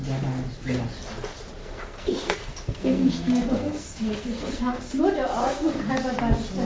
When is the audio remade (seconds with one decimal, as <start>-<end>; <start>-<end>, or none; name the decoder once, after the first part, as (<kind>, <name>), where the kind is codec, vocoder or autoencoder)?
1.6-5.0 (codec, SNAC); 5.4-5.9